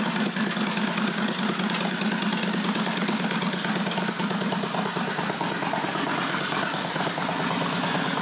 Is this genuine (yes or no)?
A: yes